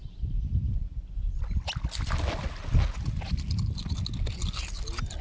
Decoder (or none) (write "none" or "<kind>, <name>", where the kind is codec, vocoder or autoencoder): none